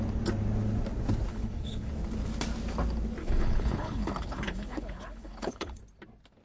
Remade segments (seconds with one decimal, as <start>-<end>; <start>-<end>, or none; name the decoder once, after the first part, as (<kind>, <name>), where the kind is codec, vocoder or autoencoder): 1.3-1.9 (codec, HILCodec); 3.2-5.8